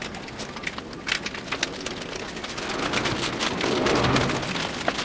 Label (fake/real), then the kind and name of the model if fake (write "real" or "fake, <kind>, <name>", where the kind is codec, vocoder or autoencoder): real